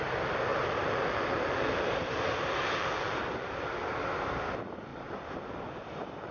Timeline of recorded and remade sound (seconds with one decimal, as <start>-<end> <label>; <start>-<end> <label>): 0.0-0.5 recorded; 0.5-2.2 remade; 2.2-2.6 recorded; 2.6-3.7 remade; 3.7-4.9 recorded; 4.9-6.3 remade